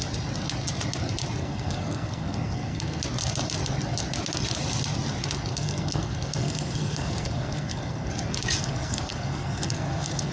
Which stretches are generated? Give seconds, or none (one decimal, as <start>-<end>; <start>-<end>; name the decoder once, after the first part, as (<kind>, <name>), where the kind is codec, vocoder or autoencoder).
1.4-3.0 (codec, SNAC); 5.5-8.1; 8.6-10.3